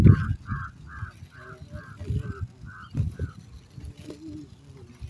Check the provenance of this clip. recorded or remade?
recorded